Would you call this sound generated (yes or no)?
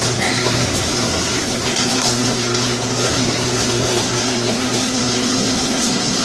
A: yes